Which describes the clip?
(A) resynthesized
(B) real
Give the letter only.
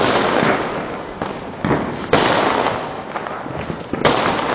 B